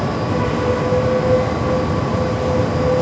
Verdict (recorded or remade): recorded